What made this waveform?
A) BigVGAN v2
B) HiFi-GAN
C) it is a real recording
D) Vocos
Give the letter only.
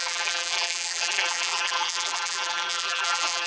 A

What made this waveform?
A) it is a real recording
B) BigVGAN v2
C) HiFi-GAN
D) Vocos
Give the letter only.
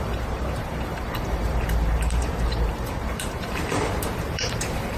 B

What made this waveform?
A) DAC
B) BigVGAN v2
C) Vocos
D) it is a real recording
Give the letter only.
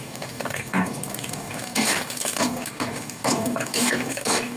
A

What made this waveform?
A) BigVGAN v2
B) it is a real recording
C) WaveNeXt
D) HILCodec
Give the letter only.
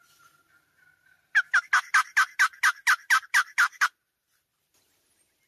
B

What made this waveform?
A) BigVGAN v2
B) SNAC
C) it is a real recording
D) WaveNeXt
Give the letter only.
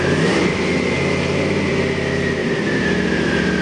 C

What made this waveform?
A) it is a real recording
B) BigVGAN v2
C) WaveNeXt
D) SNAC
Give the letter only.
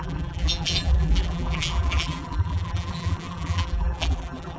B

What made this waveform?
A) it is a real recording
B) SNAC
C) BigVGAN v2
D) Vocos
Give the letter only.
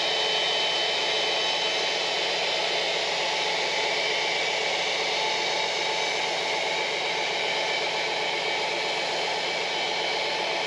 A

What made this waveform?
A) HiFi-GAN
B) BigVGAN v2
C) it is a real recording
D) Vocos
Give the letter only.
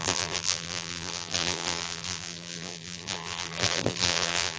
B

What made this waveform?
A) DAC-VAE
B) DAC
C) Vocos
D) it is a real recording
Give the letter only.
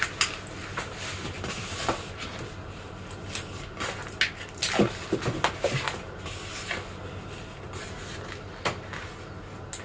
D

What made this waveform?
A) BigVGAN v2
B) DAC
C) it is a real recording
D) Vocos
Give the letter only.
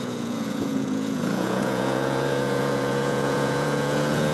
D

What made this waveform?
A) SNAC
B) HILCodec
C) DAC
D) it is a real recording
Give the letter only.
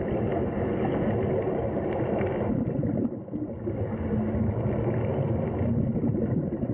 D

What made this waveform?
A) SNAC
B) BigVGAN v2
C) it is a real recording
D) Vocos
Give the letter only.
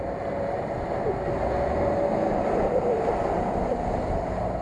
C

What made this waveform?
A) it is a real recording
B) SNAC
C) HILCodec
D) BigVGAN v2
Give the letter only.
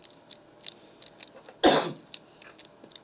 A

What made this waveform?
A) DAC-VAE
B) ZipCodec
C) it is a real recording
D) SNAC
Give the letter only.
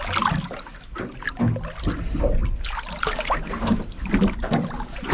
C